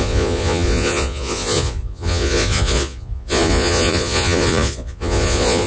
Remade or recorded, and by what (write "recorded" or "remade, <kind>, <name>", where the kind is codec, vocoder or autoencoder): remade, vocoder, Vocos